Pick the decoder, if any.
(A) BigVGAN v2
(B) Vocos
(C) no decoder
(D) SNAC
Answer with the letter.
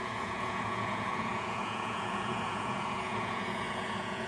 B